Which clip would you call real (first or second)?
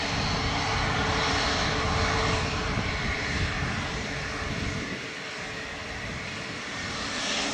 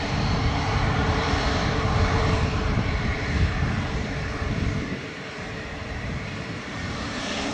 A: first